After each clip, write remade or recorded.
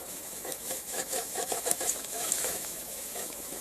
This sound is remade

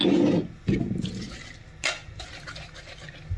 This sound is recorded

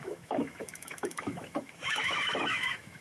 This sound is remade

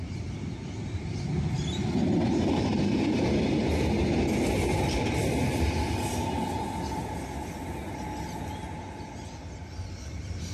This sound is recorded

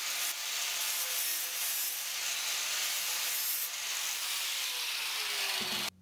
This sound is recorded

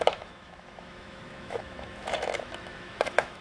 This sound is remade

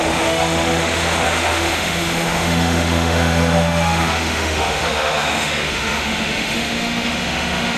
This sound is remade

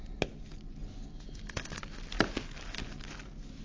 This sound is recorded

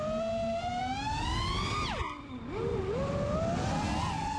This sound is recorded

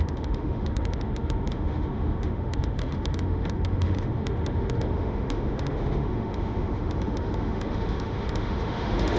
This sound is remade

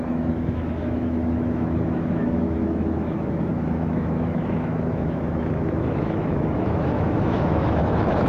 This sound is remade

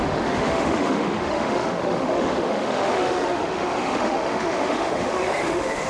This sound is remade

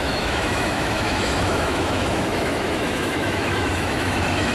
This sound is remade